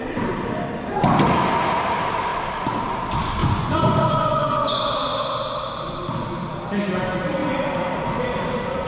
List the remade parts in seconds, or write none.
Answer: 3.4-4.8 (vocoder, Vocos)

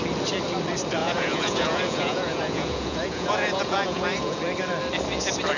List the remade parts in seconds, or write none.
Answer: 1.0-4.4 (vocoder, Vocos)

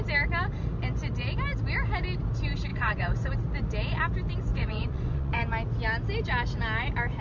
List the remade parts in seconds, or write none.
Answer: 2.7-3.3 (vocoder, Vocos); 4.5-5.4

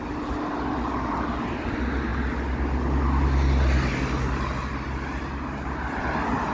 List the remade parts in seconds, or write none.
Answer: none

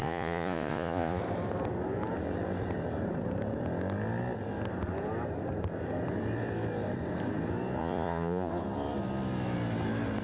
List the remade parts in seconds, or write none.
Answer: 0.0-1.2 (vocoder, Vocos); 7.8-8.5

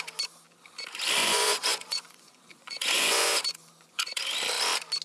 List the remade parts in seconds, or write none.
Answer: 1.2-4.2 (vocoder, Vocos)

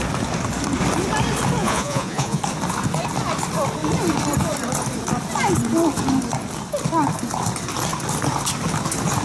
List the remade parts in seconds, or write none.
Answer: 1.6-2.4 (vocoder, Vocos)